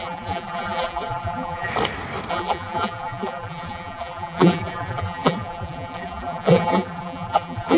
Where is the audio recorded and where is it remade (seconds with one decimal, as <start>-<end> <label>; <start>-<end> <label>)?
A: 0.0-1.7 remade; 1.7-2.3 recorded; 2.3-7.8 remade